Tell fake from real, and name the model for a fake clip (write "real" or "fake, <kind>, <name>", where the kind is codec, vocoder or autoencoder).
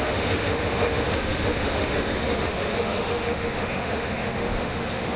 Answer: fake, autoencoder, DAC-VAE